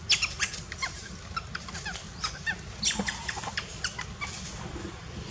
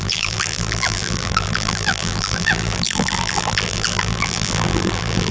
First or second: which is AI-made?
second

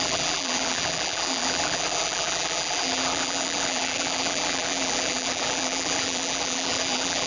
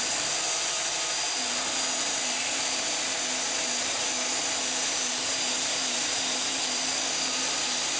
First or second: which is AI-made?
first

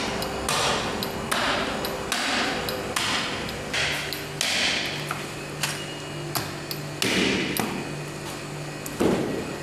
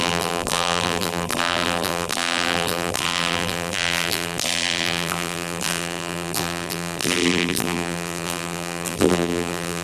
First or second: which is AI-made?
second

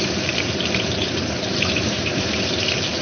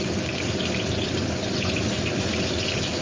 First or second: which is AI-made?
first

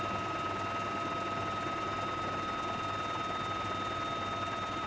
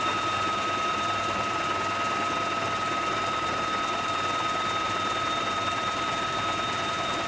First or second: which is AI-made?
second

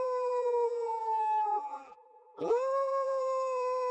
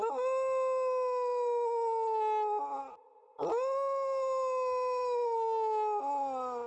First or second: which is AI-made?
first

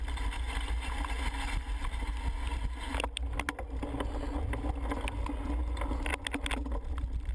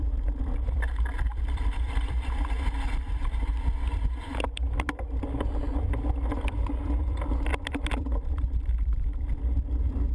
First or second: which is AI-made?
second